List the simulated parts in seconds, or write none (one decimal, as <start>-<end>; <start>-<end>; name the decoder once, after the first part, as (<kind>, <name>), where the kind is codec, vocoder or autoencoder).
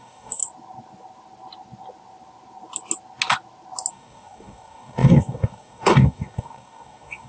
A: 0.0-0.4 (codec, DAC); 3.9-7.3